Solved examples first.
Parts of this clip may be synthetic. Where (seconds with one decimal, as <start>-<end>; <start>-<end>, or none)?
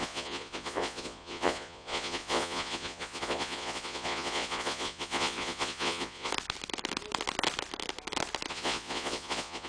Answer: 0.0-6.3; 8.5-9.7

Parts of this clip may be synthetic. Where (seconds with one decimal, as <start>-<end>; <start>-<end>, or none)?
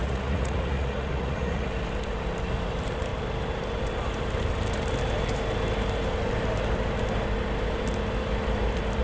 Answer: 0.0-1.7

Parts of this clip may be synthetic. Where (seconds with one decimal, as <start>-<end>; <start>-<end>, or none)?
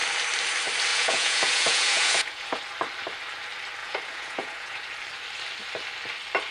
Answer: 0.9-2.6; 3.8-4.9